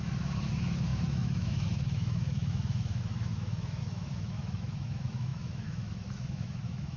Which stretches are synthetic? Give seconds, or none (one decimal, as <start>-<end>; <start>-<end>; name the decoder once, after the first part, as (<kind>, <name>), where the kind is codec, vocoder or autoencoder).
0.0-7.0 (autoencoder, DAC-VAE)